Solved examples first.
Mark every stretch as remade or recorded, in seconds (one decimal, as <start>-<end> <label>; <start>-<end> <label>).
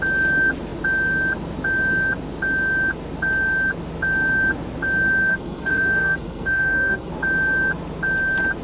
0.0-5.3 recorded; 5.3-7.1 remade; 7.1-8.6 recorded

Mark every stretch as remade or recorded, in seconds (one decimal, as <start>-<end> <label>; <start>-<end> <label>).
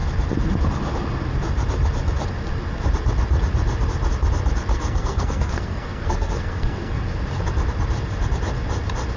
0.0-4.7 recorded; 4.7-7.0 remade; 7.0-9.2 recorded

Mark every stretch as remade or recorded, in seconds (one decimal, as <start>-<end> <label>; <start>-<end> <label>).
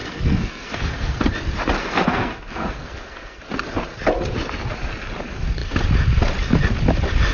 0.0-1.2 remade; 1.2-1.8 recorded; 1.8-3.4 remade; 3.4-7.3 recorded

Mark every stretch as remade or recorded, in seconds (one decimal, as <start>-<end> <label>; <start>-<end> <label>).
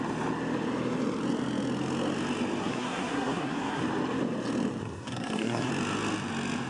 0.0-2.6 recorded; 2.6-3.8 remade; 3.8-4.8 recorded; 4.8-5.7 remade; 5.7-6.7 recorded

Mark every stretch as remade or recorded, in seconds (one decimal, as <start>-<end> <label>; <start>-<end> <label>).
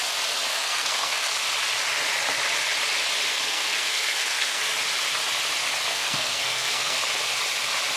0.0-0.5 recorded; 0.5-1.3 remade; 1.3-3.3 recorded; 3.3-4.6 remade; 4.6-5.9 recorded; 5.9-7.0 remade; 7.0-8.0 recorded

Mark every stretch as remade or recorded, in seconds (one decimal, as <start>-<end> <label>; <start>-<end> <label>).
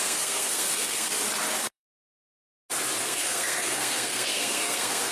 0.0-1.1 remade; 1.1-1.6 recorded; 1.6-2.4 remade; 2.4-3.0 recorded; 3.0-5.1 remade